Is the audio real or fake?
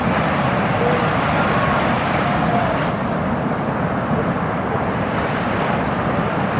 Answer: real